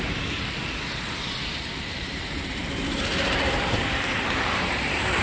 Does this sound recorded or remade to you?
remade